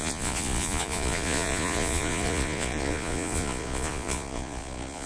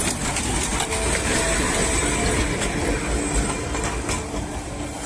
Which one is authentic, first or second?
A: second